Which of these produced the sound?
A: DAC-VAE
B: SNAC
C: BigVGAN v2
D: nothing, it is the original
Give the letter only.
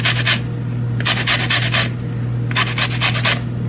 D